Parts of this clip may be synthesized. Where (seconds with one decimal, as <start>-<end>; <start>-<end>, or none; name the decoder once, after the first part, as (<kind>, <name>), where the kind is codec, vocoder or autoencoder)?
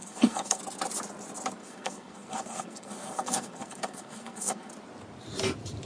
0.0-0.6 (codec, SNAC); 1.6-4.7